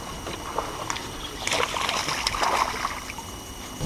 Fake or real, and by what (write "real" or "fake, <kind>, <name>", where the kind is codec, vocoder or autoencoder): real